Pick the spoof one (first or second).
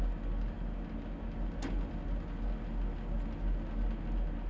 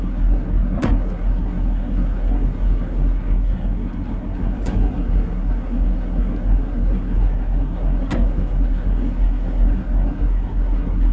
second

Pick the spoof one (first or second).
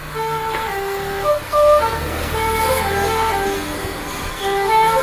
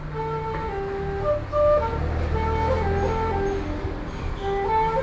first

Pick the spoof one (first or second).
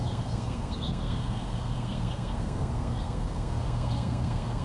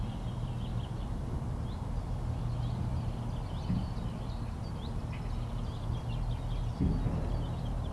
first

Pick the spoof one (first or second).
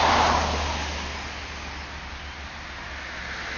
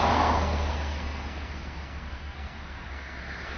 second